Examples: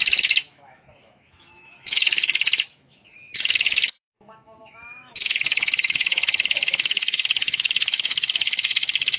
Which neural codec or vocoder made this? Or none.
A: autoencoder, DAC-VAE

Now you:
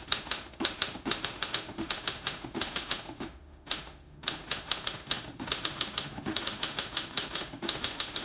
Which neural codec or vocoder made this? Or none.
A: autoencoder, DAC-VAE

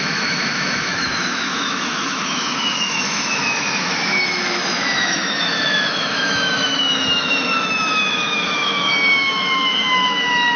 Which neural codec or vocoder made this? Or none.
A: autoencoder, DAC-VAE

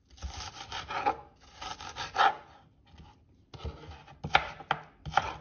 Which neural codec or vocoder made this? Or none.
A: none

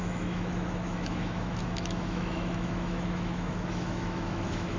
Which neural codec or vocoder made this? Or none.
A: autoencoder, DAC-VAE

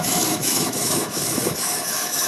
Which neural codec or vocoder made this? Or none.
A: autoencoder, DAC-VAE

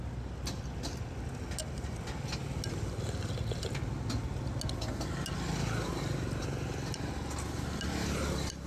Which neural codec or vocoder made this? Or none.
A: none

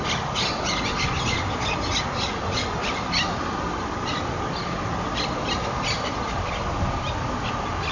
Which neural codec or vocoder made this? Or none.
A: none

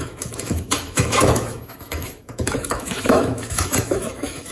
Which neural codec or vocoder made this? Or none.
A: autoencoder, DAC-VAE